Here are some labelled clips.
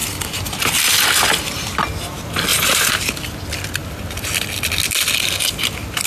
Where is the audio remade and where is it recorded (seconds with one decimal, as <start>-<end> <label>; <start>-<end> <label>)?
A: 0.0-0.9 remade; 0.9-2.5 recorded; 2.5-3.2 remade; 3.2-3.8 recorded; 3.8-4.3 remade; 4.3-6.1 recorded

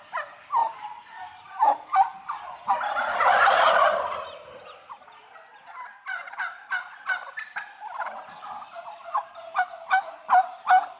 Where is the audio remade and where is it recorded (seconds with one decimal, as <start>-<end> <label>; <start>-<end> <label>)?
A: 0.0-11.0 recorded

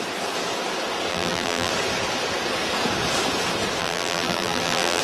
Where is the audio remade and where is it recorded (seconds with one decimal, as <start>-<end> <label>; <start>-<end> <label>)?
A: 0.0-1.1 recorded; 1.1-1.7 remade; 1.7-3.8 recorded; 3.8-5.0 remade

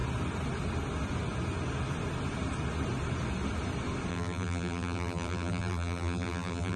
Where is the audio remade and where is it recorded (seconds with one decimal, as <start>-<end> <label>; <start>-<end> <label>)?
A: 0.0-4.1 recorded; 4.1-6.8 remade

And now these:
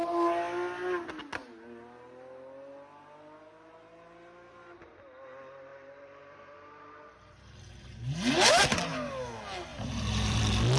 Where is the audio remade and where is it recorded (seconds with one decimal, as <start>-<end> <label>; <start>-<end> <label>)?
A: 0.0-5.7 recorded; 5.7-8.5 remade; 8.5-9.7 recorded; 9.7-10.4 remade; 10.4-10.8 recorded